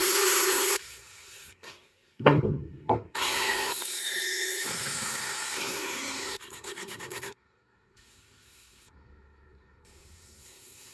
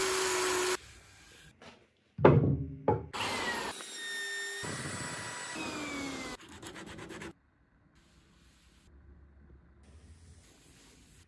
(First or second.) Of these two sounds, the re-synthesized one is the first